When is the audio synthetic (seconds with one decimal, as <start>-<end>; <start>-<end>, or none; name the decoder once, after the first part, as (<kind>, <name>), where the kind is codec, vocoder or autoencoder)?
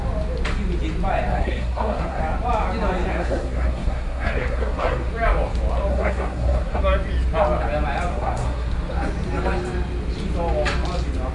1.3-2.2 (codec, SNAC); 3.1-5.1; 5.9-6.8; 8.1-8.7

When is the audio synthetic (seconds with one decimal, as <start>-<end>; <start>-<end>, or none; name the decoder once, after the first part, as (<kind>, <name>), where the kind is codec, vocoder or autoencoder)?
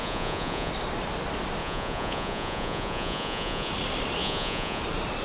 0.0-0.7 (vocoder, Vocos); 1.6-3.7; 4.2-4.8